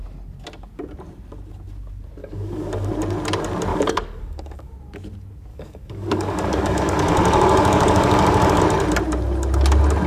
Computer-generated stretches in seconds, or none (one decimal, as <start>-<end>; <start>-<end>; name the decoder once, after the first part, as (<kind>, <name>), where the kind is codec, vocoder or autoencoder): 2.2-2.9 (codec, DAC); 3.7-4.7; 5.5-8.6